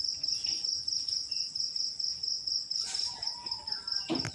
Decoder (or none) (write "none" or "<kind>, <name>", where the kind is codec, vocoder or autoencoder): none